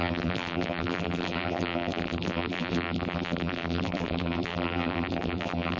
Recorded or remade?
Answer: remade